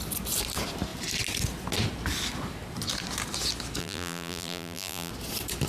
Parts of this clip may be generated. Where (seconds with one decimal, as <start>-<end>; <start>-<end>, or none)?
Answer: 3.8-5.1